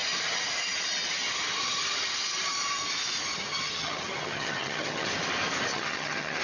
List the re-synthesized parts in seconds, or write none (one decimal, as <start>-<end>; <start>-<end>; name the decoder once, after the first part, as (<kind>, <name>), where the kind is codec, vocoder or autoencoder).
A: 3.3-5.1 (vocoder, HiFi-GAN); 5.7-6.4

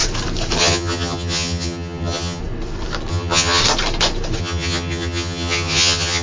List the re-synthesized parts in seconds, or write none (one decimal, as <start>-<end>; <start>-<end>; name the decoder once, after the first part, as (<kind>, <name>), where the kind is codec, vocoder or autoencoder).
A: 0.6-2.4 (vocoder, HiFi-GAN); 3.1-3.6; 4.4-6.2

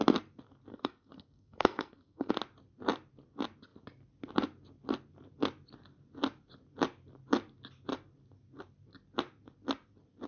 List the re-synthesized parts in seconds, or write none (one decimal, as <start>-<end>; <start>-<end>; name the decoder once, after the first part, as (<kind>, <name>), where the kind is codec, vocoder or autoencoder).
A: 0.7-2.3 (codec, SNAC)

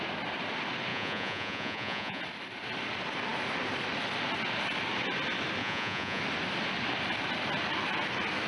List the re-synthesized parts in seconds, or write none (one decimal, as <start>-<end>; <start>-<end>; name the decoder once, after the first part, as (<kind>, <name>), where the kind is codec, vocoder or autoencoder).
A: 0.9-2.2 (vocoder, Vocos); 5.6-6.2